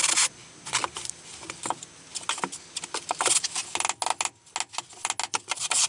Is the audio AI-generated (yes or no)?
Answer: no